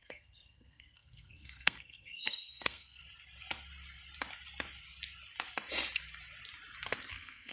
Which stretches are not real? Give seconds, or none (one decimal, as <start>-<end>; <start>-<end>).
0.0-3.0; 7.1-7.5